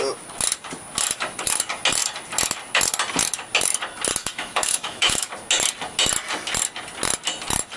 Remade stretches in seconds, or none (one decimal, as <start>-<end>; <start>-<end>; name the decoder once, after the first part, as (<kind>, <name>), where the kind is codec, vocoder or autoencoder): 4.2-5.3 (autoencoder, DAC-VAE)